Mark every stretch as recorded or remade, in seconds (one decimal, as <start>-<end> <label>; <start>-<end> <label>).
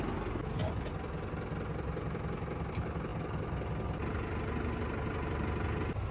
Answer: 0.0-6.1 recorded